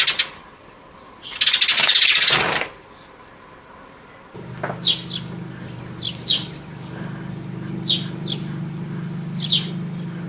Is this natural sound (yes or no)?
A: yes